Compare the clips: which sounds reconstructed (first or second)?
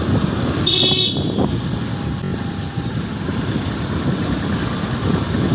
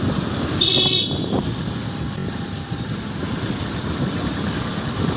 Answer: second